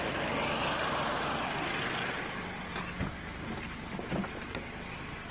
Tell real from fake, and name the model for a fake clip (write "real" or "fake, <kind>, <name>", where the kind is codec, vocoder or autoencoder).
real